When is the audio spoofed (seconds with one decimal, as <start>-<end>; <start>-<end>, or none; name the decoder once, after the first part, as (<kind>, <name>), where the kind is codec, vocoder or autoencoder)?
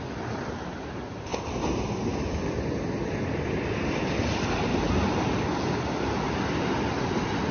none